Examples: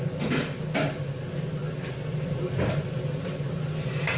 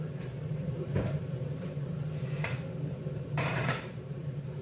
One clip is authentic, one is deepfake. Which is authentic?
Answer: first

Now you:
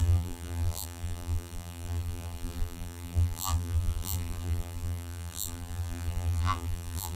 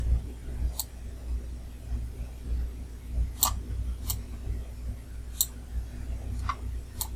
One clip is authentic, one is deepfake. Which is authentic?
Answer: second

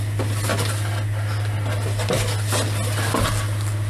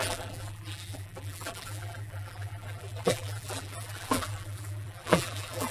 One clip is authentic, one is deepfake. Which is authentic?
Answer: first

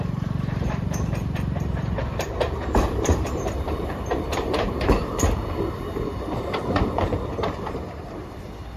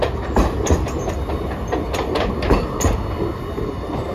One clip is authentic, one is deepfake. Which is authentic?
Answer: second